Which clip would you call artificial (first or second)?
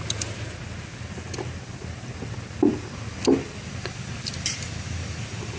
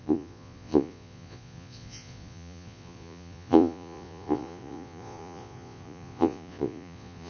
second